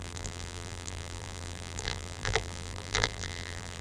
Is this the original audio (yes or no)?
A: no